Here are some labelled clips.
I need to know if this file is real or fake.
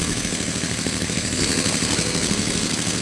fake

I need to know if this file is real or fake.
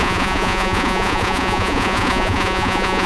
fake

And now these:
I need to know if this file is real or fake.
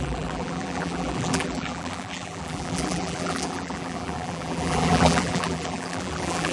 fake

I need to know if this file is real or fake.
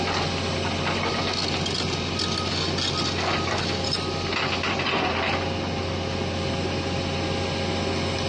real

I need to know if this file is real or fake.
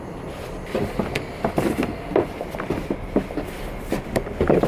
real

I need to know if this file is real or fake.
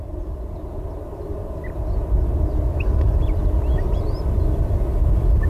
real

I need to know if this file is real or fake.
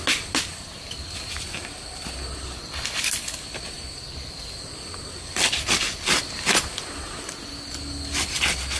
real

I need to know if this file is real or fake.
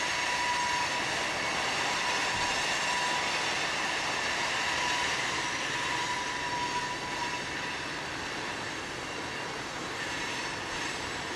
real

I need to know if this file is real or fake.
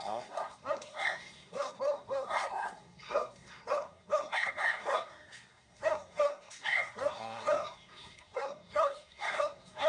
fake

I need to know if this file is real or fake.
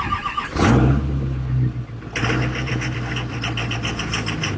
real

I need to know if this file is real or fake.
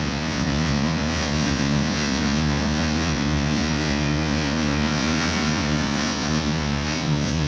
fake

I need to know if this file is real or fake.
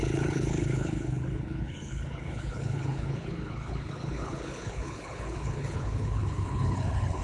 fake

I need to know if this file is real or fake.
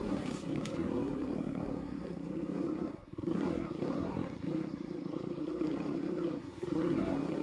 fake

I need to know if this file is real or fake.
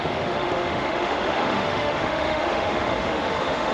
fake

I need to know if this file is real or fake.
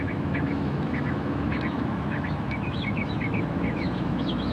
fake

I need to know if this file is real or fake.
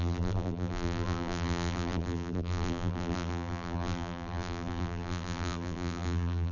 fake